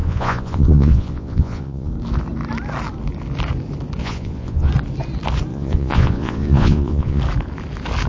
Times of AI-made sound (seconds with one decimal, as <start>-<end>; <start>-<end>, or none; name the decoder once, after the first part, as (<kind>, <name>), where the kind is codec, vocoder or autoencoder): 0.0-1.9 (vocoder, Vocos); 4.0-4.7; 5.5-7.2